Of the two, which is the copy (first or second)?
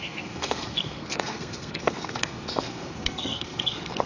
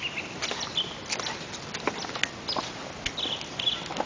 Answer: first